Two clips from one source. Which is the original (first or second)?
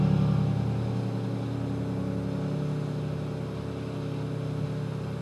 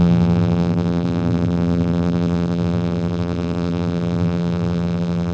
first